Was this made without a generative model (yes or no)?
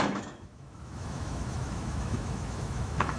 no